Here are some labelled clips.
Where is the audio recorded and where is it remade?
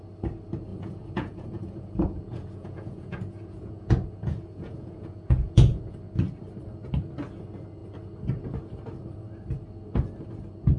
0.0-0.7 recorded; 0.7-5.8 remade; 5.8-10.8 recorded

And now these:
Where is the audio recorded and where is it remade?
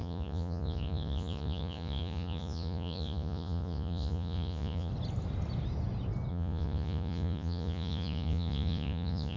0.0-4.9 remade; 4.9-6.3 recorded; 6.3-9.4 remade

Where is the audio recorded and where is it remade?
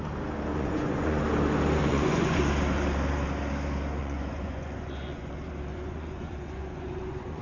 0.0-0.5 recorded; 0.5-1.2 remade; 1.2-1.8 recorded; 1.8-2.4 remade; 2.4-4.0 recorded; 4.0-5.3 remade; 5.3-5.7 recorded; 5.7-7.4 remade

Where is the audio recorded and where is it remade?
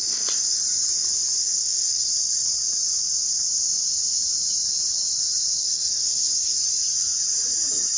0.0-0.6 remade; 0.6-1.4 recorded; 1.4-2.1 remade; 2.1-5.6 recorded; 5.6-6.6 remade; 6.6-8.0 recorded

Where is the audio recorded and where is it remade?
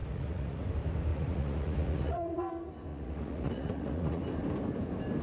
0.0-0.7 remade; 0.7-1.1 recorded; 1.1-2.5 remade; 2.5-2.9 recorded; 2.9-4.2 remade; 4.2-5.2 recorded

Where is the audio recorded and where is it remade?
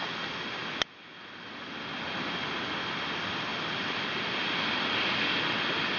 0.0-6.0 recorded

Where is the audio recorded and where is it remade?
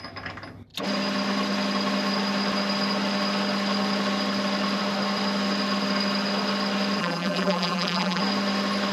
0.0-7.0 recorded; 7.0-8.2 remade; 8.2-8.9 recorded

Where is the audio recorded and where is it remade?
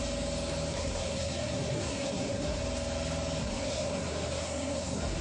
0.0-0.7 recorded; 0.7-2.6 remade; 2.6-3.4 recorded; 3.4-5.2 remade